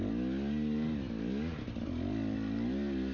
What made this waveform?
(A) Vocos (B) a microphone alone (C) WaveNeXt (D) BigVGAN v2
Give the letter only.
B